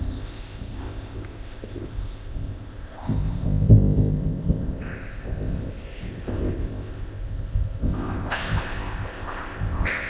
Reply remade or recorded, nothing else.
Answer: remade